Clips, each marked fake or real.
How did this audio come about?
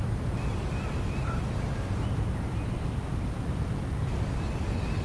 real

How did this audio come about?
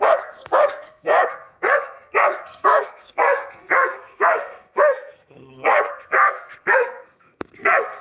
fake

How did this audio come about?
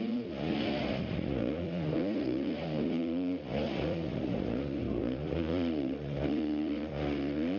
fake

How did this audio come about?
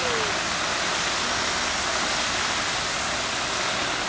real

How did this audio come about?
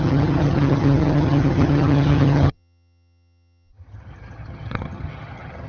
fake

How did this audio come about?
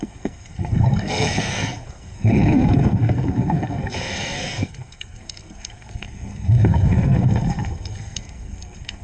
fake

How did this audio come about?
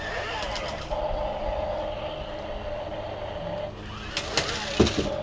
real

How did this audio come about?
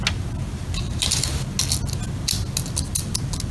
real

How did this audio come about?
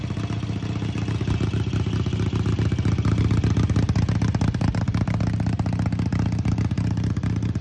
real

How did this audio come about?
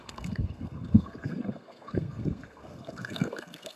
fake